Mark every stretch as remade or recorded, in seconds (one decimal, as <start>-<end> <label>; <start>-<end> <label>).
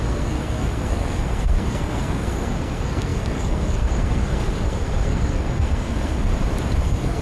0.0-6.3 remade; 6.3-6.8 recorded; 6.8-7.2 remade